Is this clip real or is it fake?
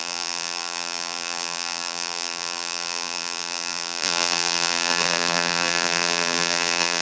fake